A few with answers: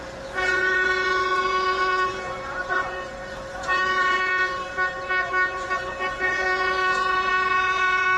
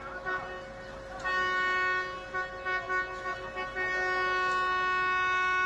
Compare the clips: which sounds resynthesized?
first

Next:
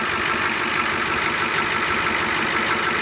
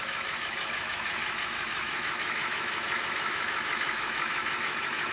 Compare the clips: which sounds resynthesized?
second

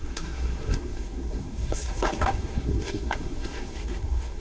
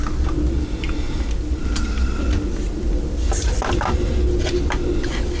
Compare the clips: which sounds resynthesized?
first